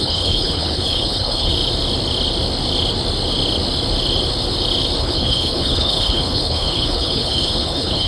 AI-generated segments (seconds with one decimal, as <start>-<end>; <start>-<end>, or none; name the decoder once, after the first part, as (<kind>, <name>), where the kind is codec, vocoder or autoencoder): 0.0-1.5 (codec, HILCodec); 5.0-8.1

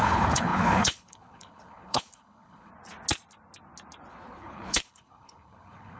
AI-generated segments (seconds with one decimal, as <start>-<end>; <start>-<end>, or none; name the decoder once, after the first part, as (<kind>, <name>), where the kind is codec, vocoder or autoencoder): 0.0-2.7 (codec, HILCodec); 4.1-6.0

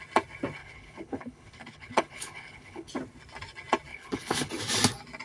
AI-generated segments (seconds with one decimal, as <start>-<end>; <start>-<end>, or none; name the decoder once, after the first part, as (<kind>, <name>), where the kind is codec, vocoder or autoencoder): 0.6-2.9 (codec, HILCodec); 3.9-4.5